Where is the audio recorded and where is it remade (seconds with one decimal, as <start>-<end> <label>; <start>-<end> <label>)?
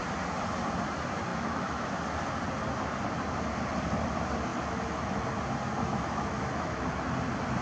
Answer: 0.0-1.3 recorded; 1.3-1.9 remade; 1.9-4.5 recorded; 4.5-5.2 remade; 5.2-5.9 recorded; 5.9-6.9 remade; 6.9-7.6 recorded